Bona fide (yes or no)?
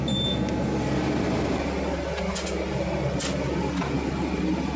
yes